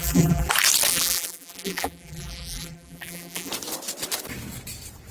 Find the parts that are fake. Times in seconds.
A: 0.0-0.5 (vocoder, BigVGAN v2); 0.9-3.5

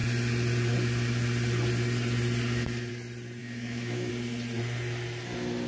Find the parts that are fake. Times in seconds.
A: 3.4-4.1 (autoencoder, DAC-VAE)

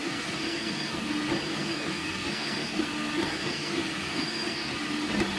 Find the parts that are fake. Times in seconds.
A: 0.0-1.1 (codec, SNAC); 1.5-4.7

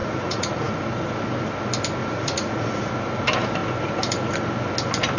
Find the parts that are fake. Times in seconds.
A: 0.0-0.7 (vocoder, Vocos); 2.0-2.9

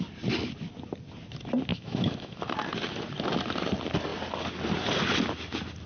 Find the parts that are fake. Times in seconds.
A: 1.7-2.4 (autoencoder, DAC-VAE)

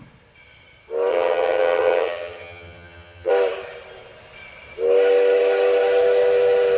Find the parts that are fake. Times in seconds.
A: 1.1-3.3 (vocoder, HiFi-GAN)

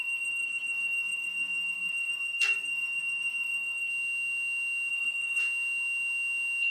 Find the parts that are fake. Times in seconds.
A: 0.0-3.9 (codec, SNAC); 4.9-5.4

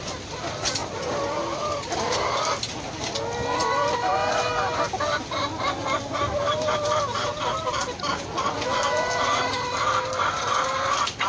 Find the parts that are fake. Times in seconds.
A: none